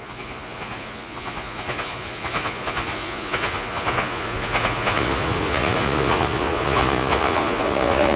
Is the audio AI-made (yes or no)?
yes